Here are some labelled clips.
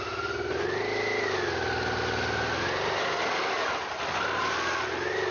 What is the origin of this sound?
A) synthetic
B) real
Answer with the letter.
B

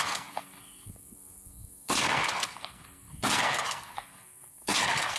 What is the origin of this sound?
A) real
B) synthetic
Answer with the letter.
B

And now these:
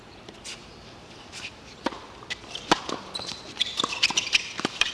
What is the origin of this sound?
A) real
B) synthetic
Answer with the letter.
B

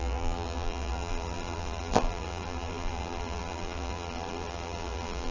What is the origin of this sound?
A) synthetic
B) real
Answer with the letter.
A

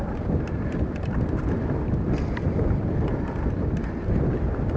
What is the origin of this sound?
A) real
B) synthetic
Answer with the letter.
A